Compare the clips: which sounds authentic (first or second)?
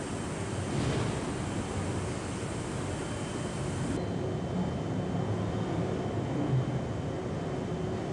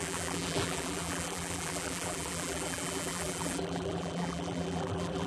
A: first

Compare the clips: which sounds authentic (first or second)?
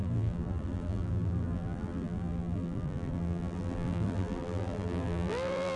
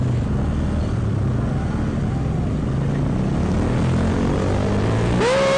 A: second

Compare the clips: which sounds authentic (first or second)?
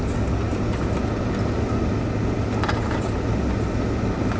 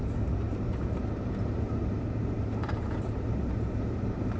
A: first